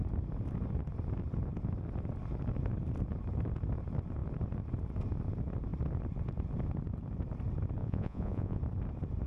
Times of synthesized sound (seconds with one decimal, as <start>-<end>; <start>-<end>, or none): 7.8-8.6